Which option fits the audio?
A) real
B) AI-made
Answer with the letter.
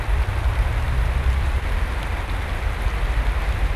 A